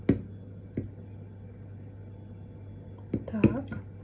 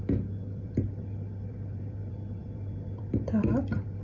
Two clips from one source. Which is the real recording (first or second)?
first